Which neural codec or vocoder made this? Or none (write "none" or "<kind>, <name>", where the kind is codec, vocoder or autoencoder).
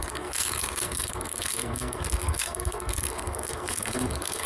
codec, SNAC